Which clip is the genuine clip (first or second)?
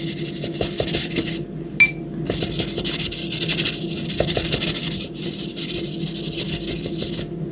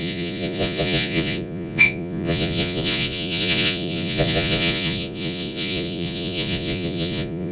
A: first